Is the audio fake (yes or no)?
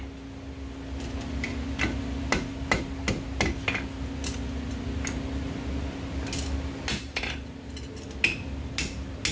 no